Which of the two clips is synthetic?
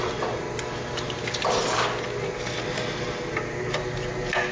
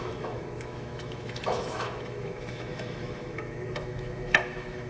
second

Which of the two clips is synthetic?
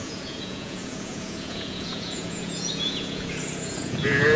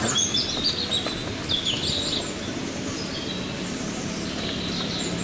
first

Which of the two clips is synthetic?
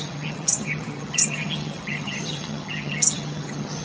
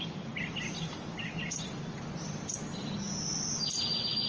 first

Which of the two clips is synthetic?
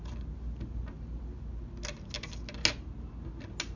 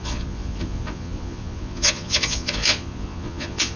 second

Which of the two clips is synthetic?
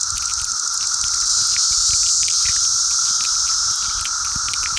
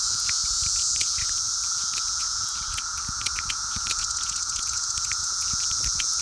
second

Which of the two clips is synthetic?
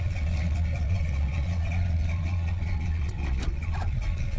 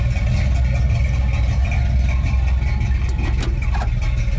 first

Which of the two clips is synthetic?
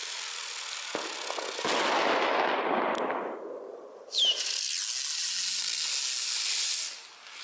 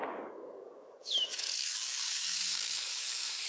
second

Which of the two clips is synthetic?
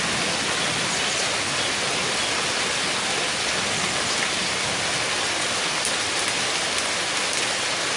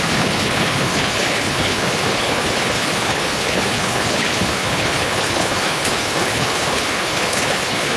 second